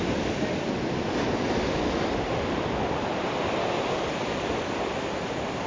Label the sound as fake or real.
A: real